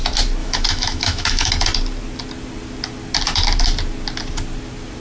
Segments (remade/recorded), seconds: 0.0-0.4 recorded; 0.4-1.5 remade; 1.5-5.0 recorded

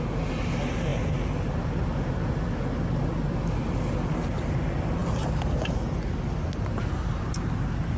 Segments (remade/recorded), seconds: 0.0-8.0 recorded

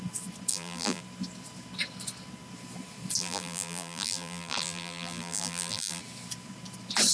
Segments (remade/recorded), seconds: 0.0-0.5 recorded; 0.5-1.0 remade; 1.0-3.2 recorded; 3.2-6.0 remade; 6.0-7.1 recorded

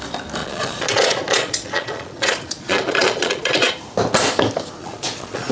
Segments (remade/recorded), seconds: 0.0-0.4 recorded; 0.4-3.7 remade; 3.7-4.8 recorded; 4.8-5.5 remade

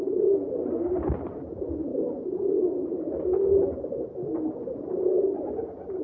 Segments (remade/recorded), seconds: 0.0-6.0 recorded

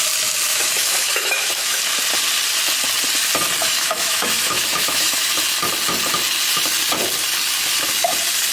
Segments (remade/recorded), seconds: 0.0-0.5 recorded; 0.5-1.8 remade; 1.8-3.6 recorded; 3.6-5.3 remade; 5.3-8.5 recorded

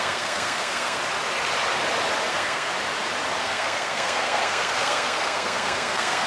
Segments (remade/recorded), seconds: 0.0-1.0 remade; 1.0-2.3 recorded; 2.3-2.7 remade; 2.7-3.4 recorded; 3.4-6.3 remade